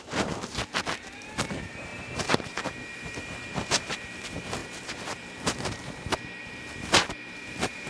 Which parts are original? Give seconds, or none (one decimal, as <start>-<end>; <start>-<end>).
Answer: none